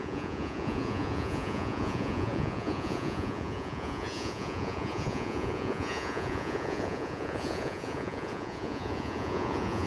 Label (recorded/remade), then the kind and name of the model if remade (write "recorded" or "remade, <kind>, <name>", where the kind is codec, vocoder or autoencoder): remade, vocoder, Vocos